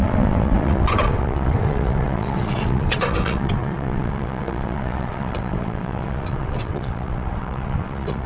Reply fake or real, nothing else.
fake